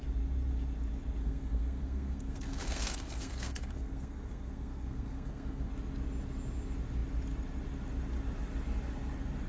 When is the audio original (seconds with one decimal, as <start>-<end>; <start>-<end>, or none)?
0.0-1.2; 5.7-9.5